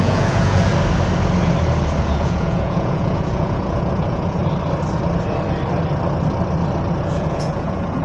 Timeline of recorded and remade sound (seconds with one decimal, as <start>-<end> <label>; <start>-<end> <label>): 0.0-0.7 remade; 0.7-2.0 recorded; 2.0-4.4 remade; 4.4-7.0 recorded; 7.0-8.0 remade

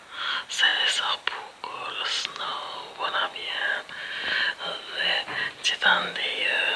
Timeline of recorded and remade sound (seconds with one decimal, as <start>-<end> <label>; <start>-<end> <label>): 0.0-6.8 recorded